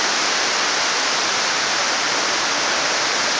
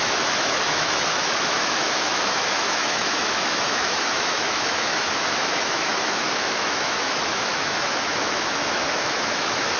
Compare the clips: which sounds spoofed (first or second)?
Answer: second